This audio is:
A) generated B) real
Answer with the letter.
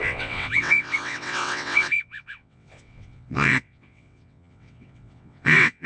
A